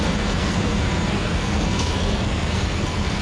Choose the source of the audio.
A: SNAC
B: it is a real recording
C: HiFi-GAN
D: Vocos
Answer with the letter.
A